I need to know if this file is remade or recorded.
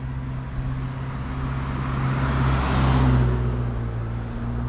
recorded